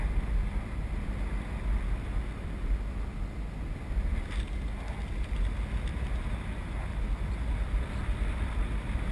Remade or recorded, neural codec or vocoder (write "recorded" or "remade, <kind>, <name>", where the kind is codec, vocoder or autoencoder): recorded